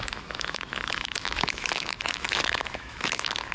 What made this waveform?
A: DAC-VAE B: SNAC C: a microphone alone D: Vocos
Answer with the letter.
A